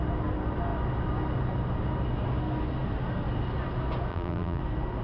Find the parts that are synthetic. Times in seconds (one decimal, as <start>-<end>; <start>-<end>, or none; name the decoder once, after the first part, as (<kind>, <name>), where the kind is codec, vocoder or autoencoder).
4.1-4.6 (vocoder, BigVGAN v2)